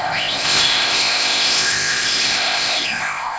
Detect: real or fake fake